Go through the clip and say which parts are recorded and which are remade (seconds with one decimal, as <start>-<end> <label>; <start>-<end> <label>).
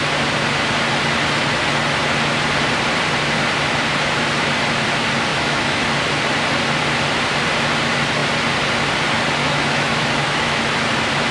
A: 0.0-5.3 recorded; 5.3-5.8 remade; 5.8-9.4 recorded; 9.4-10.6 remade; 10.6-11.3 recorded